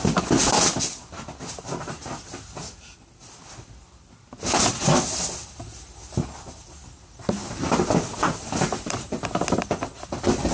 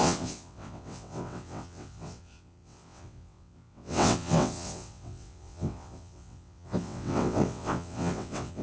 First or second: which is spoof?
second